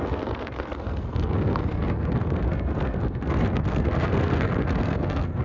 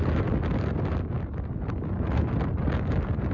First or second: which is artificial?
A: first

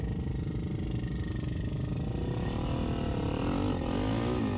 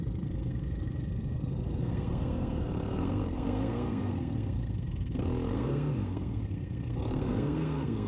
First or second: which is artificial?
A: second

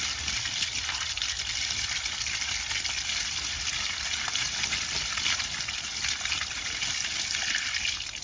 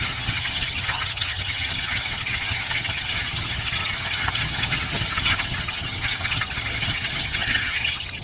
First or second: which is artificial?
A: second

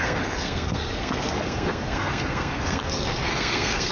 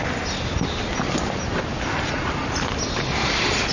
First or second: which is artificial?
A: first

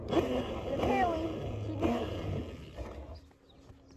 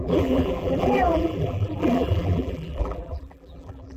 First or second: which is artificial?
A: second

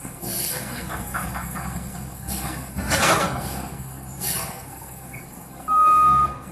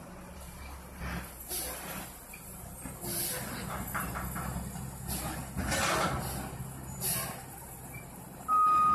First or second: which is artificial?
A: first